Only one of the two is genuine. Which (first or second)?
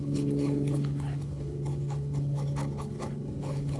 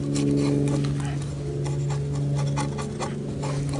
second